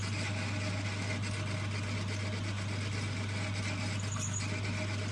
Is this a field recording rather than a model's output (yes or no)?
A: yes